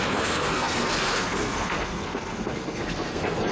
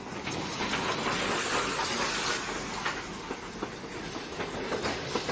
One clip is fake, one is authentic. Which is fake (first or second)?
first